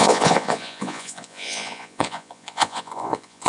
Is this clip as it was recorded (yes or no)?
no